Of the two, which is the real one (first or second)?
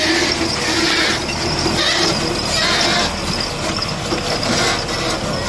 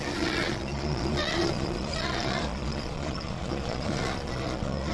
first